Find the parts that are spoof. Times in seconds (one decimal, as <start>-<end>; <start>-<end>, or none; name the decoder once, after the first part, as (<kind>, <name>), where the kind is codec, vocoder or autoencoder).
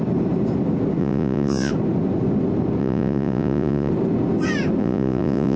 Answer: 1.0-1.7 (vocoder, Vocos); 2.8-3.9; 4.8-5.6